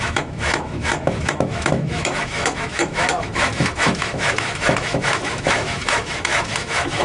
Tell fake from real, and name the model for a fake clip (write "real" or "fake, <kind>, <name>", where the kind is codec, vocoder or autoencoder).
fake, autoencoder, DAC-VAE